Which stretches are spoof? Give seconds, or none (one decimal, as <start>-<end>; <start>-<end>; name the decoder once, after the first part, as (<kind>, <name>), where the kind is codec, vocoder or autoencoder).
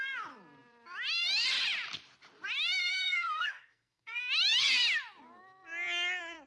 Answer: 2.8-4.2 (codec, SNAC)